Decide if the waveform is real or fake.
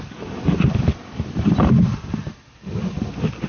real